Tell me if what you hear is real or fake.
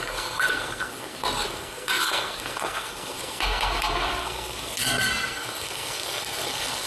fake